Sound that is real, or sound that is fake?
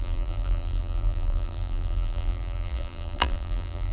fake